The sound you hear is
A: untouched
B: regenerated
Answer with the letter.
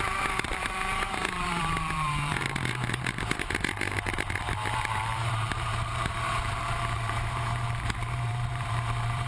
B